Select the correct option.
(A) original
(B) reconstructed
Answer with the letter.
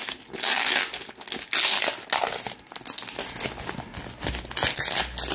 A